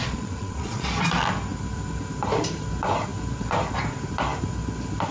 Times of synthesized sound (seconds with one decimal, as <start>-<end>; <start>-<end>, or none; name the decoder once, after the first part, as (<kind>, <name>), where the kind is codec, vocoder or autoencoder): 0.0-0.9 (vocoder, Vocos)